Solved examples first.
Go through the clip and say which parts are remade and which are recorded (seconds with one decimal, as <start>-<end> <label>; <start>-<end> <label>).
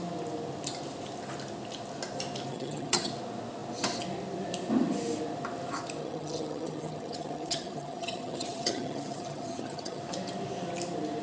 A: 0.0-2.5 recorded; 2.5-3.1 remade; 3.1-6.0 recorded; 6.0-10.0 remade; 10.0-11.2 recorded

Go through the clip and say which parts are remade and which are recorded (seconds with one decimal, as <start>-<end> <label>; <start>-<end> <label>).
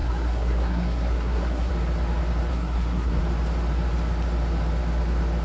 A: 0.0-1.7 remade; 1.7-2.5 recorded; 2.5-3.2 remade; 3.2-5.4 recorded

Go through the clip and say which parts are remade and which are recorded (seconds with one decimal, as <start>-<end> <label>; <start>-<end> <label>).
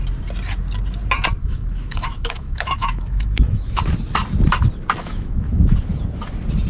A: 0.0-1.4 recorded; 1.4-3.8 remade; 3.8-5.0 recorded; 5.0-5.6 remade; 5.6-6.7 recorded